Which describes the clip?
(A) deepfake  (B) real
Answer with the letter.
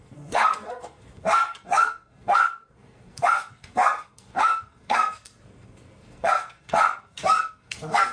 A